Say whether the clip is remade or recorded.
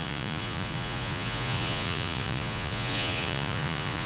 remade